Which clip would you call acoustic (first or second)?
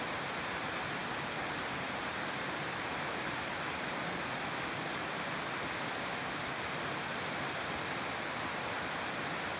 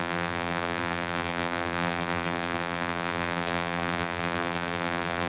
first